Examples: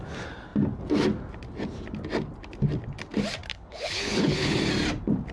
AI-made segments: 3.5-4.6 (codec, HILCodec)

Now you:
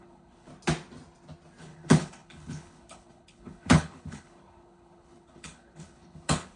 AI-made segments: 0.0-0.5 (codec, HILCodec); 1.6-6.6